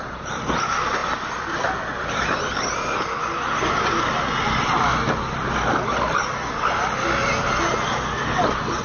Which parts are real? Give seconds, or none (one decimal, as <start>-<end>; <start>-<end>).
0.0-8.8